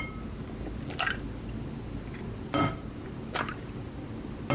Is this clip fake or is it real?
fake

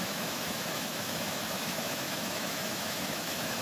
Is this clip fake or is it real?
fake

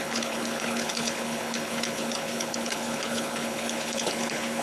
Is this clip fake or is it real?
fake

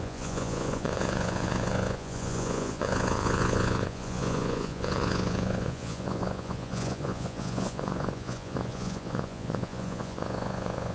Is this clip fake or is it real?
fake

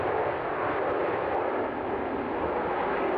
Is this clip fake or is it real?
real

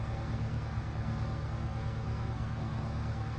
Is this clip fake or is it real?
fake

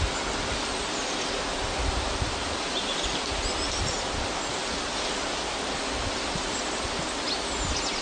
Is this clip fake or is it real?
real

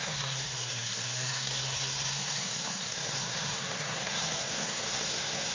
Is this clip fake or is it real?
fake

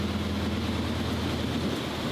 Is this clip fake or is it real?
real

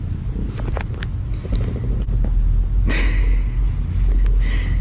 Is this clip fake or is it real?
real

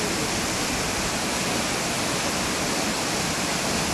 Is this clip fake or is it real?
real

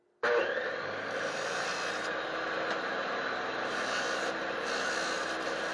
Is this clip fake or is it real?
real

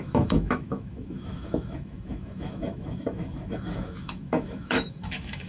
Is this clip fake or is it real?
fake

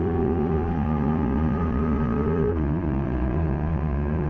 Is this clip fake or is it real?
fake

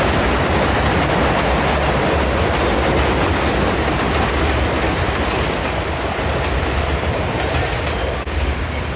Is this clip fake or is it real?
real